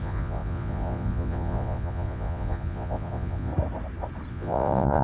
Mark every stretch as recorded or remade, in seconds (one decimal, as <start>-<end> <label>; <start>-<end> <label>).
0.0-3.5 remade; 3.5-4.3 recorded; 4.3-5.0 remade